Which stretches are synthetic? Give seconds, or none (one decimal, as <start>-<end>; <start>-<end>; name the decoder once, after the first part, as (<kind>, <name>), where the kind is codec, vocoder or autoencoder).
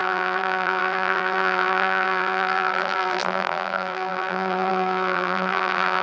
0.0-6.0 (vocoder, BigVGAN v2)